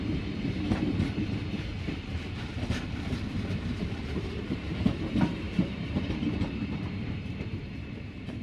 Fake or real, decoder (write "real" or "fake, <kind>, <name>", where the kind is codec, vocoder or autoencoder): fake, vocoder, BigVGAN v2